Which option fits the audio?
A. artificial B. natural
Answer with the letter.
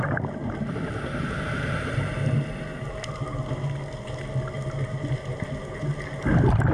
B